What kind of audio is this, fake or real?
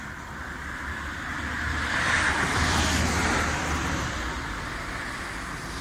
fake